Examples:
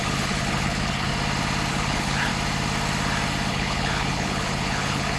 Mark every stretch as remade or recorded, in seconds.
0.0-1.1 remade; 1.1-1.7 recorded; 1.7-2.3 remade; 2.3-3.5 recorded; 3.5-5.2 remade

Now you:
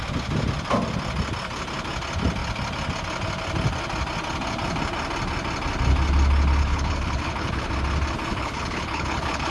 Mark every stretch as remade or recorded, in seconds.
0.0-6.6 recorded; 6.6-7.7 remade; 7.7-8.3 recorded; 8.3-9.5 remade

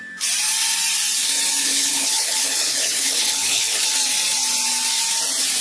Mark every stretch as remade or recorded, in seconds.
0.0-1.6 recorded; 1.6-3.9 remade; 3.9-5.6 recorded

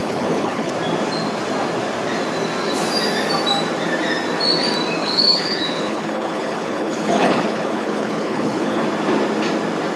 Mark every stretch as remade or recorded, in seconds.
0.0-0.7 remade; 0.7-5.0 recorded; 5.0-8.8 remade; 8.8-10.0 recorded

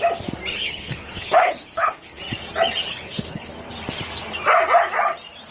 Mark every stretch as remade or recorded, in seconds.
0.0-0.5 recorded; 0.5-2.2 remade; 2.2-2.9 recorded; 2.9-3.5 remade; 3.5-5.5 recorded

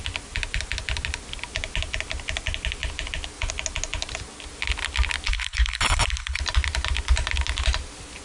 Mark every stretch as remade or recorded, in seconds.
0.0-5.3 recorded; 5.3-6.4 remade; 6.4-8.2 recorded